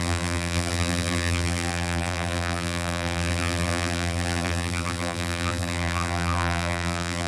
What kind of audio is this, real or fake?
fake